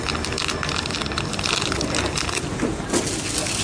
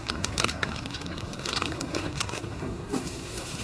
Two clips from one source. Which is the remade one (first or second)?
second